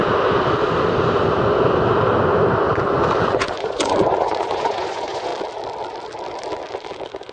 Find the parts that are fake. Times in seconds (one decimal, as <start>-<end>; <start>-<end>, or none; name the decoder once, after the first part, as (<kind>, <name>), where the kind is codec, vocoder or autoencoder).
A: 3.2-5.3 (vocoder, Vocos)